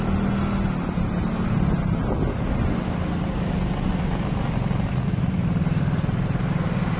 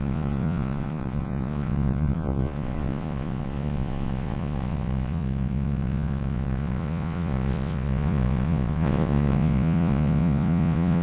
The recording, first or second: first